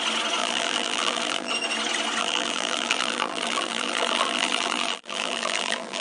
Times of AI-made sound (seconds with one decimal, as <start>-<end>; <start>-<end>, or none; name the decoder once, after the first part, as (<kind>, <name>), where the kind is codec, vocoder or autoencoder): 0.4-1.5 (vocoder, BigVGAN v2); 2.2-6.0